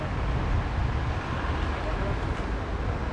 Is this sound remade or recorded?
recorded